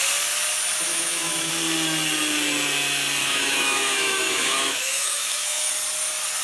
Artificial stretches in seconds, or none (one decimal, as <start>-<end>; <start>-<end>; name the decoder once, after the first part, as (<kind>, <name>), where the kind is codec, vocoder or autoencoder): 0.9-1.5 (autoencoder, DAC-VAE); 3.2-5.7